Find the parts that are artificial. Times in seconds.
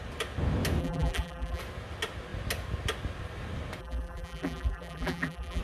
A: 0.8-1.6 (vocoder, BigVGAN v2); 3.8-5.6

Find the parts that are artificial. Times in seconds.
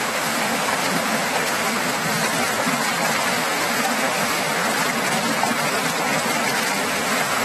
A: 0.0-2.2 (autoencoder, DAC-VAE); 3.3-4.6; 6.9-7.4